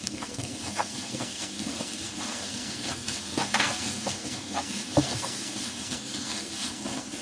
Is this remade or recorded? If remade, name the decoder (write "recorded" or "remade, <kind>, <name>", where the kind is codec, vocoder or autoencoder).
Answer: remade, codec, SNAC